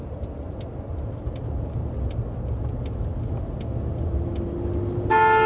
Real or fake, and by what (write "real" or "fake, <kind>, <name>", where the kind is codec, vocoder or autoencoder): real